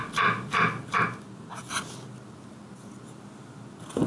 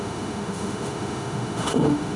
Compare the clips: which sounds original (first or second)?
first